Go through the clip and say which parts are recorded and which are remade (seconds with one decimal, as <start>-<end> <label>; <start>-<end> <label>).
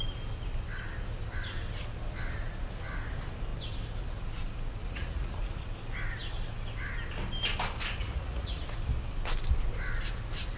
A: 0.0-4.8 recorded; 4.8-5.6 remade; 5.6-8.0 recorded; 8.0-8.6 remade; 8.6-10.6 recorded